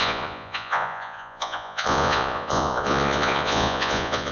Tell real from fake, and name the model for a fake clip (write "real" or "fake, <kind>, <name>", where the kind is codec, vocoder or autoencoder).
fake, vocoder, Vocos